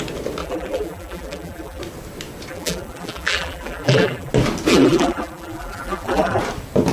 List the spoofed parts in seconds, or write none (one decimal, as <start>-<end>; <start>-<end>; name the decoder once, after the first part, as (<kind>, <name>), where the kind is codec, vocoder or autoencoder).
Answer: 0.4-1.8 (vocoder, BigVGAN v2); 2.5-4.3; 4.7-6.4